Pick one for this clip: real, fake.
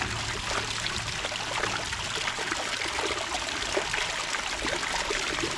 real